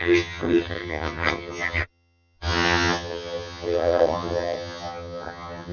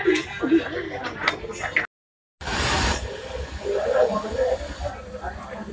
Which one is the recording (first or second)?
second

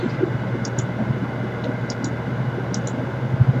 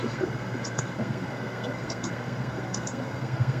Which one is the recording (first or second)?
first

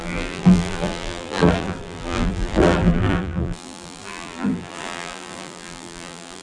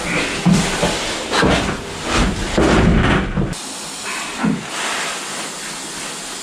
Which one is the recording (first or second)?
second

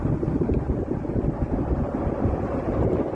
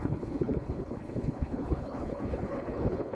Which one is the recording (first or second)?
first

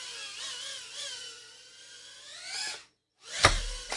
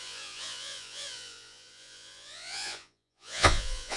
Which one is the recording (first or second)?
first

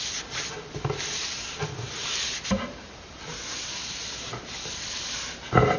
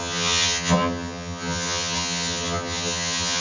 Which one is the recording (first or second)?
first